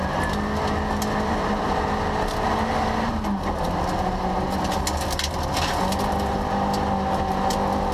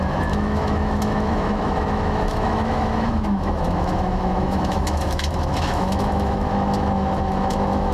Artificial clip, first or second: second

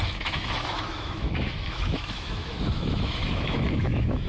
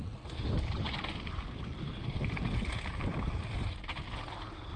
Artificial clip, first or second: first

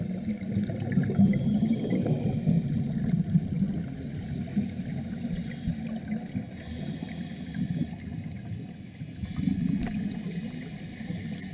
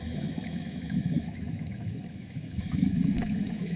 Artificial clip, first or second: second